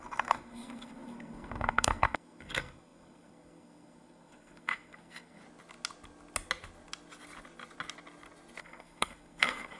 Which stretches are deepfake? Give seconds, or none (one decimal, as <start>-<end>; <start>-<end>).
0.0-5.4; 8.6-9.8